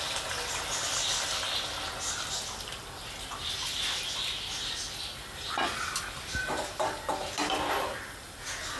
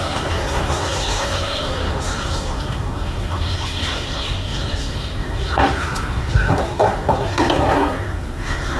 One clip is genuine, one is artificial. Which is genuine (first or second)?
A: first